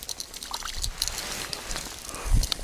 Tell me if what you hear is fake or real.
real